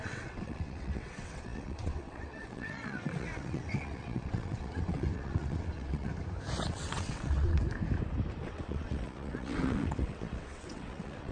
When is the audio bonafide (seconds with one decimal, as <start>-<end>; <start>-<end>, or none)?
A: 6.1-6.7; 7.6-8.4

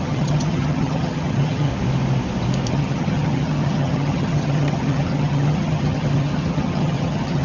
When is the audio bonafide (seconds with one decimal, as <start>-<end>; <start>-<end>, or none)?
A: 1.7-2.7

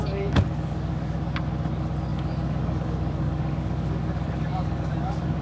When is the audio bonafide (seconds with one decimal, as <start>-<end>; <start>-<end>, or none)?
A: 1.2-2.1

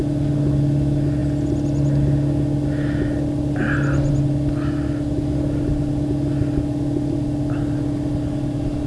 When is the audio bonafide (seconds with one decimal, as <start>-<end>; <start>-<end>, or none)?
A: 0.0-8.9